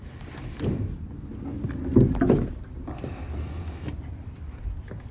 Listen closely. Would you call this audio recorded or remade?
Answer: recorded